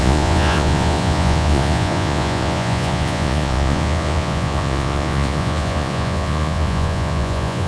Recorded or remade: remade